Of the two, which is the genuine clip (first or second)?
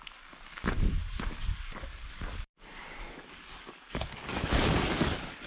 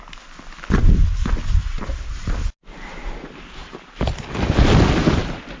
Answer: second